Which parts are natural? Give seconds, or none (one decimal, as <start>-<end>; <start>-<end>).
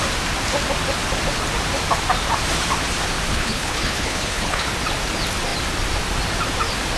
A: 0.0-3.3; 4.7-7.0